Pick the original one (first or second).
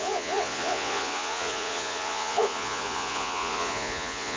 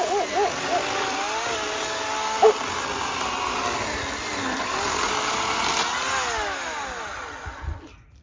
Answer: second